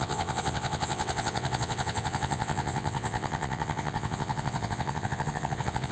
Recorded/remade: remade